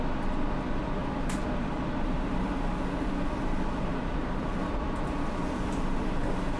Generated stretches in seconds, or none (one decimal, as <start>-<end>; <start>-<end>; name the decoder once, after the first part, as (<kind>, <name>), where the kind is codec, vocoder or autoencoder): 1.0-5.0 (vocoder, BigVGAN v2)